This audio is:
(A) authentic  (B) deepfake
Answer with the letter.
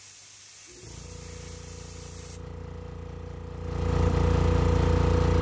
A